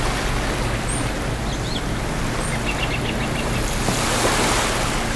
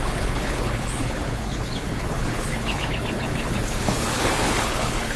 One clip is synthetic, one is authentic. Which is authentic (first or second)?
first